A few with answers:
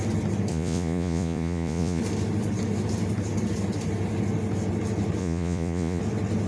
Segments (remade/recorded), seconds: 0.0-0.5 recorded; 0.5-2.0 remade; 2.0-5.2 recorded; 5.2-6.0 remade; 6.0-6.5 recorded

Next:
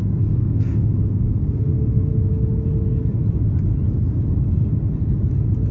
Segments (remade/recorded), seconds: 0.0-2.1 remade; 2.1-5.7 recorded

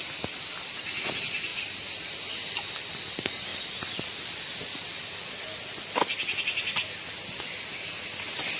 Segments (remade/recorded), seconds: 0.0-8.6 recorded